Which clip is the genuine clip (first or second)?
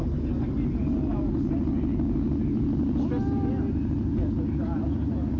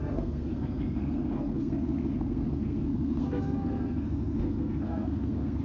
first